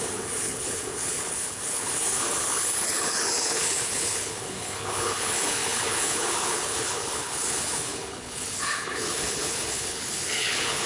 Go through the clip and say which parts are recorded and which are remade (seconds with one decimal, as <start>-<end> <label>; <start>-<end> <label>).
0.0-10.9 remade